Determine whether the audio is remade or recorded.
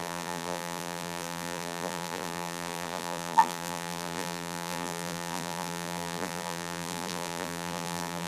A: remade